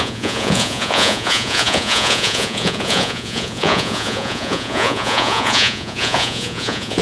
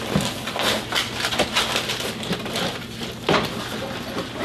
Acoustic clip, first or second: second